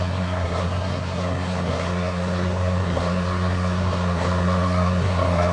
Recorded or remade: remade